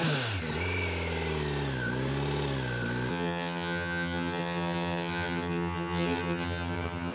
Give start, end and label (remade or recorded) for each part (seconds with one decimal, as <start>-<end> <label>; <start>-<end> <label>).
0.0-3.1 recorded; 3.1-7.1 remade

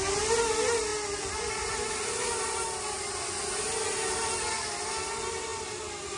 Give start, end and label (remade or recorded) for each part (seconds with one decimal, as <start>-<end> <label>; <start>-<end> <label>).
0.0-6.2 recorded